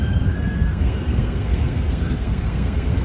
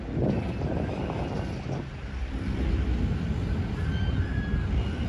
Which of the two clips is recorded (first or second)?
second